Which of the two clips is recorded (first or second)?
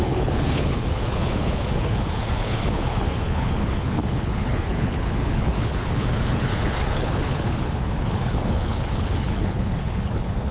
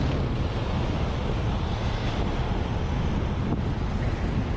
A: second